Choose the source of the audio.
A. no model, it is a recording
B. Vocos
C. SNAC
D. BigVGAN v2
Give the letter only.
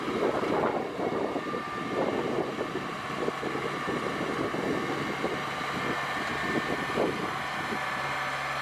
A